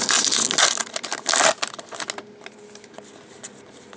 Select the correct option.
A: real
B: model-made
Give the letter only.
A